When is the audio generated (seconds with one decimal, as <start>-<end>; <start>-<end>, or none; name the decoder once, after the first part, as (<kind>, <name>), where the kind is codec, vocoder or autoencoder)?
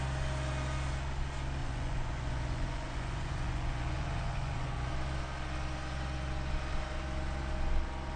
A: 1.6-4.9 (vocoder, Vocos)